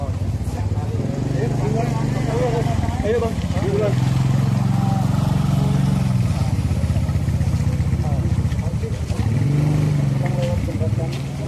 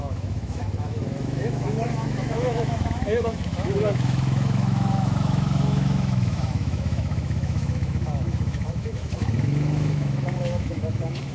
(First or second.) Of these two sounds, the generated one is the second